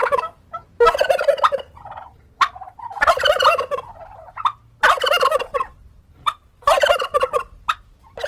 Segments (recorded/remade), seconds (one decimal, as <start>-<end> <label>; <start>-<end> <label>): 0.0-6.1 recorded; 6.1-6.9 remade; 6.9-8.3 recorded